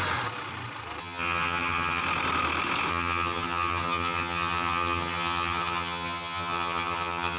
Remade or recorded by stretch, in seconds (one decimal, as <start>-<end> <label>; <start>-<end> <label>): 0.0-1.0 recorded; 1.0-2.0 remade; 2.0-2.9 recorded; 2.9-7.4 remade